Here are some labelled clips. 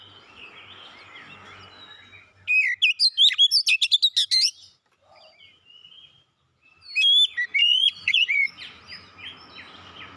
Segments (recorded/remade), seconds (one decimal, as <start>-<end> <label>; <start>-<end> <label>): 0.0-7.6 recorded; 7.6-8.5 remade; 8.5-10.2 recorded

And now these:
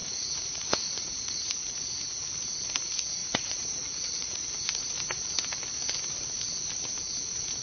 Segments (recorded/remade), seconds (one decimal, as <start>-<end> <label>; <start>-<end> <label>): 0.0-1.6 remade; 1.6-3.2 recorded; 3.2-5.0 remade; 5.0-7.6 recorded

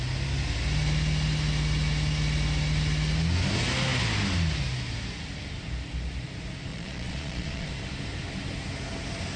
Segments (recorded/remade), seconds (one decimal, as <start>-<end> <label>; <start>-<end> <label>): 0.0-6.7 recorded; 6.7-7.7 remade; 7.7-9.4 recorded